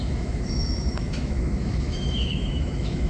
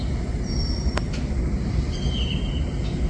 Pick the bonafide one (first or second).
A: second